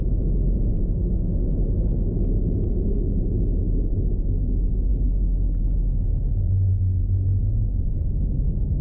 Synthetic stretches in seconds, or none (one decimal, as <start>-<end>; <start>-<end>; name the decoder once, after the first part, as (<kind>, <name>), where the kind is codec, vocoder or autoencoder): 4.9-5.6 (codec, DAC)